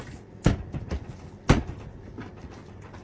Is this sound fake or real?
real